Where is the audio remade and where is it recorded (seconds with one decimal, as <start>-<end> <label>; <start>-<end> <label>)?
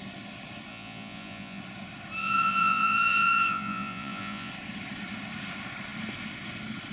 0.0-0.7 recorded; 0.7-1.6 remade; 1.6-2.2 recorded; 2.2-4.5 remade; 4.5-6.9 recorded